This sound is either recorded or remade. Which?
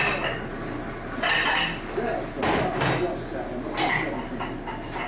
recorded